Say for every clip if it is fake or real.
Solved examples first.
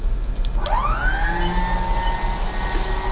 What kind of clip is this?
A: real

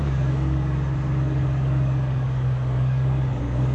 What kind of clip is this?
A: fake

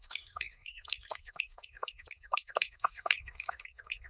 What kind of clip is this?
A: fake